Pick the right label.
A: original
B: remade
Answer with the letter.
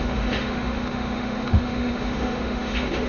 B